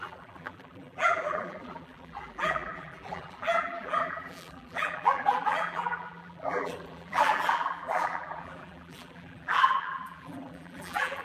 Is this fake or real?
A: fake